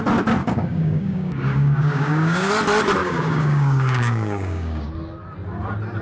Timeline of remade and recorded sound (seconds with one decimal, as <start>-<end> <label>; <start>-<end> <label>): 0.0-0.4 recorded; 0.4-2.5 remade; 2.5-3.0 recorded; 3.0-4.9 remade; 4.9-6.0 recorded